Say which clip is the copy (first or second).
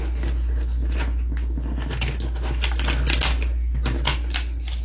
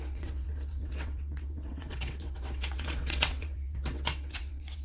second